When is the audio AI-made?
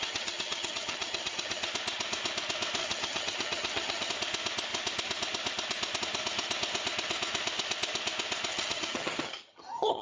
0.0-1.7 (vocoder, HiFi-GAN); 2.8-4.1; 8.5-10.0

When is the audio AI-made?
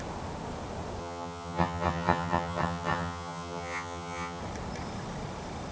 1.0-4.4 (vocoder, HiFi-GAN)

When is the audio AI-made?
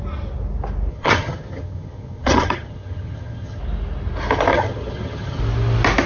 0.9-3.6 (vocoder, HiFi-GAN); 4.5-5.4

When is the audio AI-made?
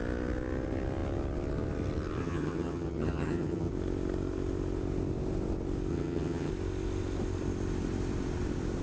2.2-3.7 (vocoder, HiFi-GAN); 5.9-6.5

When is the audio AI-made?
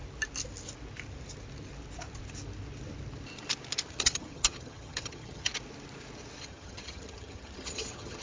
3.9-5.5 (vocoder, HiFi-GAN); 6.4-8.2